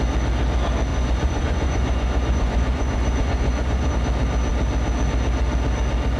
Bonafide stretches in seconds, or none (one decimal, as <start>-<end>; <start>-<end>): 0.0-0.9; 3.9-6.2